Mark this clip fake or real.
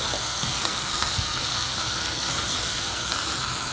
fake